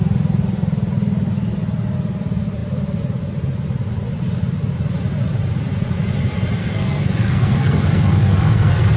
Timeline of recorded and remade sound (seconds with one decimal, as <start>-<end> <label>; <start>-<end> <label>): 0.0-6.6 recorded; 6.6-9.0 remade